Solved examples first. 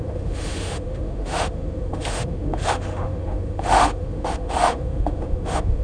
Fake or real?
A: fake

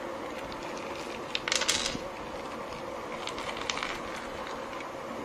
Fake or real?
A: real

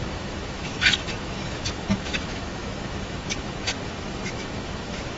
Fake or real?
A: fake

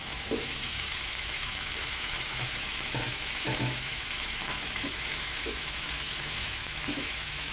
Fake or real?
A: fake